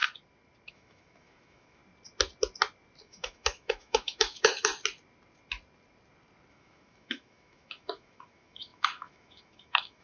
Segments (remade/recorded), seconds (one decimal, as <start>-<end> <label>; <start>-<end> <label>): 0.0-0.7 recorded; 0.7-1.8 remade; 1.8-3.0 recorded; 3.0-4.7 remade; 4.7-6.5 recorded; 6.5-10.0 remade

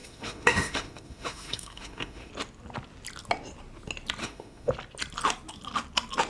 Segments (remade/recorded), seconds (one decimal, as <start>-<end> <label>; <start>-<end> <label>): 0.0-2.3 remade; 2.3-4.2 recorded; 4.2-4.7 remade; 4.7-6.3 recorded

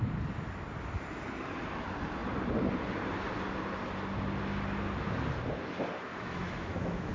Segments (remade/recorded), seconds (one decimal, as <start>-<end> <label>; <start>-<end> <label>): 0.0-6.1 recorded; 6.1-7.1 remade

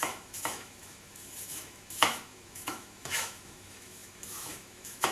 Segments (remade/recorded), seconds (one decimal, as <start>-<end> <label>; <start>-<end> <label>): 0.0-5.1 remade

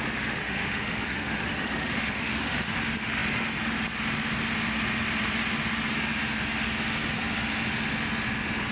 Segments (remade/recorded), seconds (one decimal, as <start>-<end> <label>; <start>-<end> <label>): 0.0-0.4 recorded; 0.4-2.7 remade; 2.7-8.7 recorded